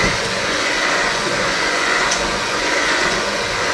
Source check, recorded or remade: remade